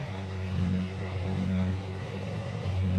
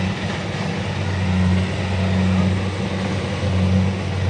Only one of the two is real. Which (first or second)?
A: second